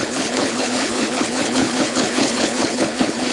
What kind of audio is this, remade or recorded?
remade